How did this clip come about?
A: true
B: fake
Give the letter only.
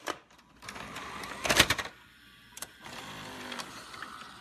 B